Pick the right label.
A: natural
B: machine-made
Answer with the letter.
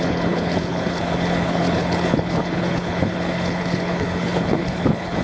B